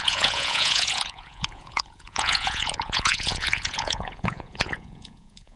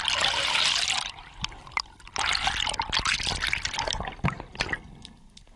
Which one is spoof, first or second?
first